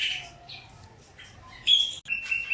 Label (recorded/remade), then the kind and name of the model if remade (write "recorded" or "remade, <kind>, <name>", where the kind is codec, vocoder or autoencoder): recorded